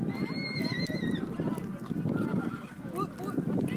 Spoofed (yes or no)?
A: no